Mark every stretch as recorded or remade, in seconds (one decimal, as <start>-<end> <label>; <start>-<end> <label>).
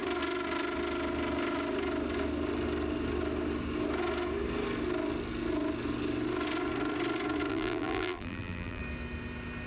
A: 0.0-7.5 recorded; 7.5-8.8 remade; 8.8-9.7 recorded